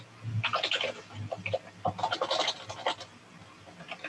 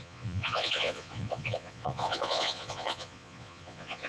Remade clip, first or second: second